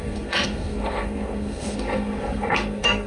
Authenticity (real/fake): fake